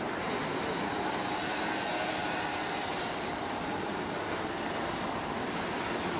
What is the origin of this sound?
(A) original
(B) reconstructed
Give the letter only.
A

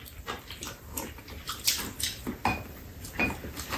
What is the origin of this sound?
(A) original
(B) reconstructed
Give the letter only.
B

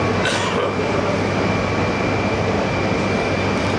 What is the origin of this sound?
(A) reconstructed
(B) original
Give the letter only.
B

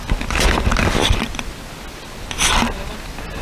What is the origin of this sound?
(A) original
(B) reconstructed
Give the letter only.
A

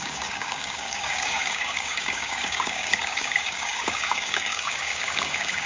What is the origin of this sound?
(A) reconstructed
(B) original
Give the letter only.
A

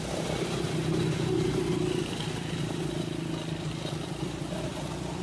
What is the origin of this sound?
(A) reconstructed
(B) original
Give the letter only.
B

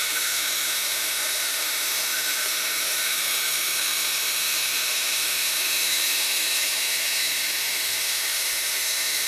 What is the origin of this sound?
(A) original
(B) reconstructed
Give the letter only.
B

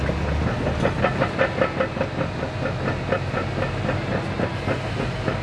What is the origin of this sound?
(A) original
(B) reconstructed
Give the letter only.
A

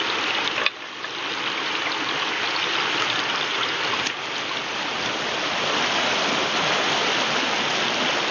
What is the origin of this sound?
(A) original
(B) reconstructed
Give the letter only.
A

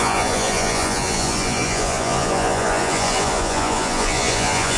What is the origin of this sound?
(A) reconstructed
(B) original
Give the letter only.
A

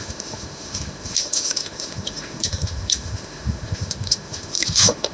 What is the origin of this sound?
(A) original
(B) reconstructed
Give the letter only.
B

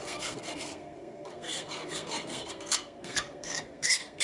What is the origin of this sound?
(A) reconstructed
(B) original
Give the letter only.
A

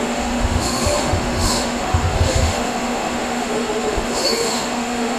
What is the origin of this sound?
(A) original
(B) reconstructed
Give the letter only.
B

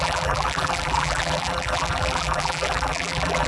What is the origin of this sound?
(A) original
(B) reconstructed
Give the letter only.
B